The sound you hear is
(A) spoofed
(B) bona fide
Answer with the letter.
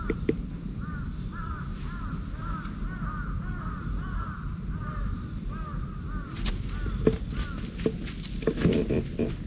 B